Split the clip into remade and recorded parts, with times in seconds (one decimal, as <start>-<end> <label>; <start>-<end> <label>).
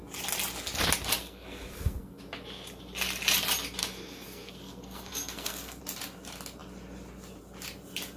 0.0-1.2 recorded; 1.2-2.2 remade; 2.2-3.8 recorded; 3.8-5.8 remade; 5.8-8.2 recorded